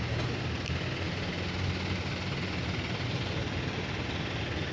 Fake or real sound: real